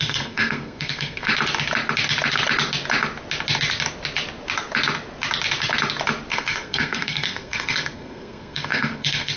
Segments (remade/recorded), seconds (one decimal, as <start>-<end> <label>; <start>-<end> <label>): 0.0-1.3 remade; 1.3-6.3 recorded; 6.3-9.4 remade